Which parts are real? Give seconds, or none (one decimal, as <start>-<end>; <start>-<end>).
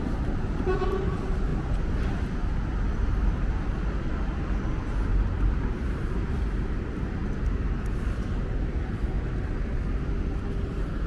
0.0-5.1; 6.6-11.1